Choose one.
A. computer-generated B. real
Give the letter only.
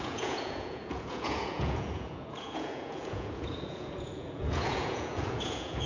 A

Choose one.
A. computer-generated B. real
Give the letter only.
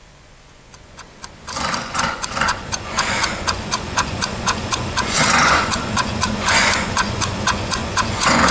A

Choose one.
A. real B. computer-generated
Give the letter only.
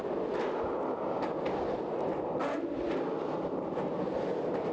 A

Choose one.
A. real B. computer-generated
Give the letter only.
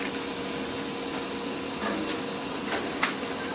A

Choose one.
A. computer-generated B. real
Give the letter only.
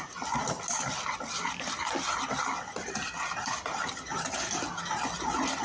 B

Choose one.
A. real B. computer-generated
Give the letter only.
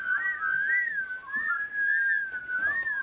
A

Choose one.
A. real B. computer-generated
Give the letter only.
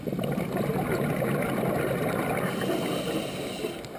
A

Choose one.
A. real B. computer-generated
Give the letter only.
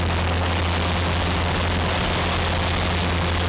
A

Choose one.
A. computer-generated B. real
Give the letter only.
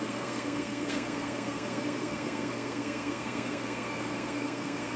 A